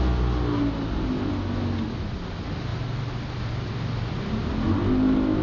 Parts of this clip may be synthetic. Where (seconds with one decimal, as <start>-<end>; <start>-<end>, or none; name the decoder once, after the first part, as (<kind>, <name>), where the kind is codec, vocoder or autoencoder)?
none